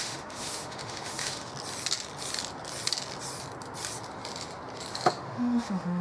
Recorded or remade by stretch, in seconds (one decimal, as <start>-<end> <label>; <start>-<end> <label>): 0.0-1.5 remade; 1.5-5.1 recorded; 5.1-6.0 remade